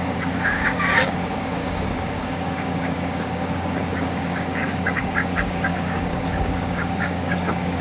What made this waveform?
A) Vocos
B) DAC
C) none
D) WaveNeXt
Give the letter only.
B